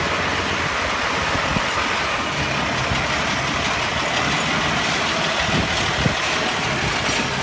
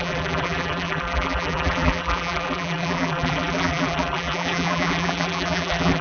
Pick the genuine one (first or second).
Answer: first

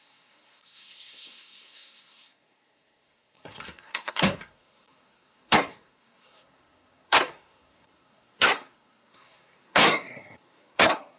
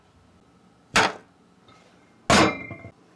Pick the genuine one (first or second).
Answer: second